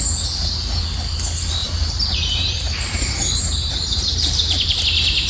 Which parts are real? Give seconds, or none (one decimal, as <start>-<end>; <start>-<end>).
0.0-1.6; 4.8-5.3